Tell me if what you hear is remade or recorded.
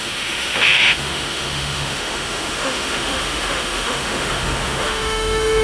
remade